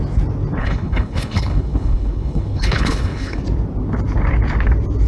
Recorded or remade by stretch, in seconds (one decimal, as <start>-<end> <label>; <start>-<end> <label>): 0.0-0.6 recorded; 0.6-3.4 remade; 3.4-5.1 recorded